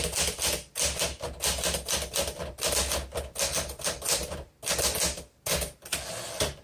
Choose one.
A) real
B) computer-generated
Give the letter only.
A